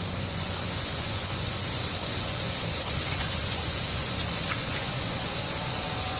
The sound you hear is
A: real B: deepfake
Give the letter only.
B